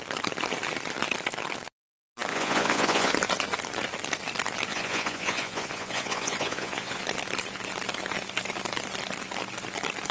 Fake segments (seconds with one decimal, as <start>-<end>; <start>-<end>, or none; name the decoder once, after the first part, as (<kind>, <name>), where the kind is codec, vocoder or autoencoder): 2.3-3.1 (vocoder, Vocos); 4.7-7.0